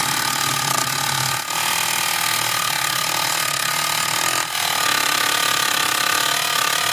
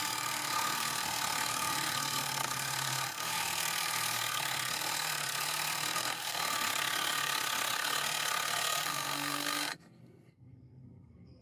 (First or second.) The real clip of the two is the first